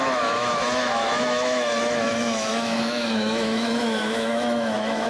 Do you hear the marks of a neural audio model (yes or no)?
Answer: yes